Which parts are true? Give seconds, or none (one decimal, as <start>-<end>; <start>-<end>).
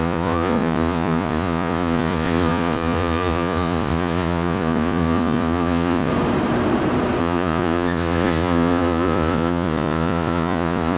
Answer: 6.1-7.2